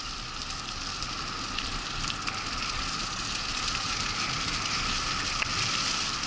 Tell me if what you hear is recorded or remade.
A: recorded